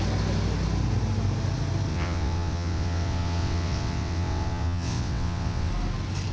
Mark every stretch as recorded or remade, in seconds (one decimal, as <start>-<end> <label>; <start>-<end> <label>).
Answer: 0.0-1.9 recorded; 1.9-5.7 remade; 5.7-6.3 recorded